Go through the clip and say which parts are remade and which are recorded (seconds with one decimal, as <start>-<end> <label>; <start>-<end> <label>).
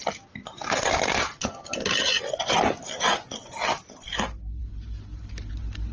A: 0.0-5.9 recorded